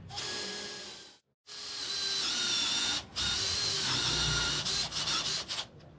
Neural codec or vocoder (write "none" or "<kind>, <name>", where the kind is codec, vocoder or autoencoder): none